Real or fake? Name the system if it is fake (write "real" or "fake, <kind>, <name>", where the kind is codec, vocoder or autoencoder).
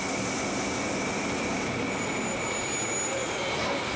real